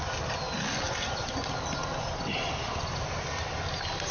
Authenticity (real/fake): real